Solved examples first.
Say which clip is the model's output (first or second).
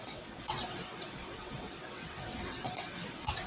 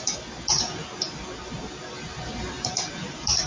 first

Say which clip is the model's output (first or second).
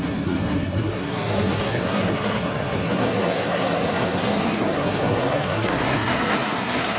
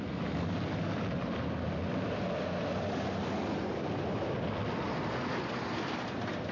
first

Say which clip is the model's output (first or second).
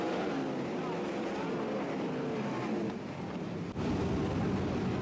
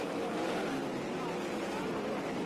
second